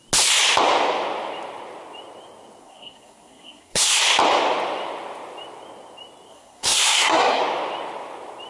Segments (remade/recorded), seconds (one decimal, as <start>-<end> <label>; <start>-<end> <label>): 0.0-2.6 recorded; 2.6-4.0 remade; 4.0-6.3 recorded; 6.3-7.4 remade; 7.4-8.5 recorded